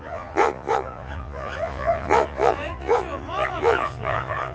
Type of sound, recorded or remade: remade